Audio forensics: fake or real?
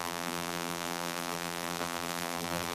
fake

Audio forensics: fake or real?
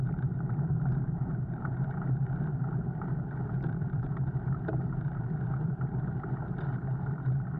fake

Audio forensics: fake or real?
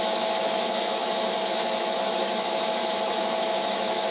fake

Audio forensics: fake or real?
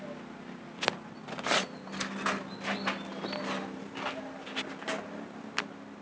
real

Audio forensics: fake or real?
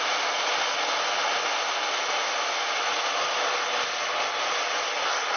real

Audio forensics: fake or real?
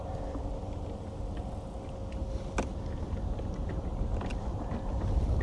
real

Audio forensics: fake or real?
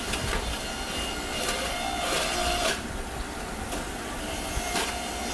real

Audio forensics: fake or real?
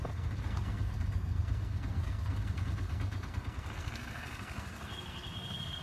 fake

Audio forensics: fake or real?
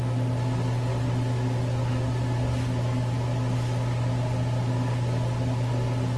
real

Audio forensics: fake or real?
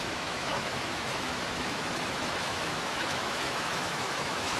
fake